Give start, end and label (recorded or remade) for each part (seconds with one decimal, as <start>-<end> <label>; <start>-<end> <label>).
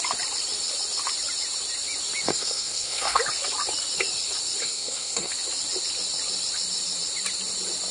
0.0-2.3 recorded; 2.3-3.2 remade; 3.2-4.6 recorded; 4.6-5.3 remade; 5.3-7.9 recorded